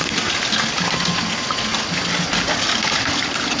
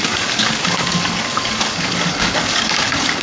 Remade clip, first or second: second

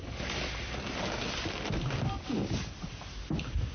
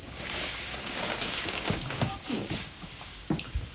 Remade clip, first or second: second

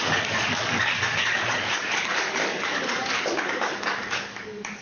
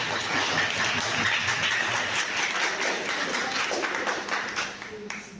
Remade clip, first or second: first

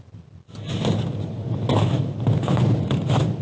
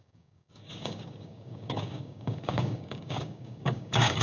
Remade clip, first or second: second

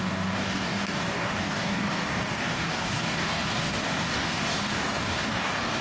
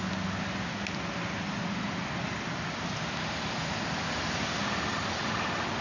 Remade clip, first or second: first